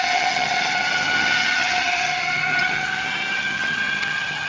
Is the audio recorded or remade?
remade